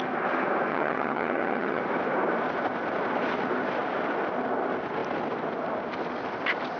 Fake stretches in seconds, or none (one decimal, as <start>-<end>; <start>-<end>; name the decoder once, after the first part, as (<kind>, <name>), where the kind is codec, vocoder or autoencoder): 0.7-1.8 (vocoder, HiFi-GAN)

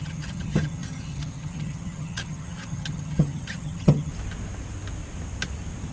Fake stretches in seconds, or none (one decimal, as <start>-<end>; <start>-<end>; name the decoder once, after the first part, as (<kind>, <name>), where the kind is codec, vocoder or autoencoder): 0.0-4.1 (vocoder, HiFi-GAN)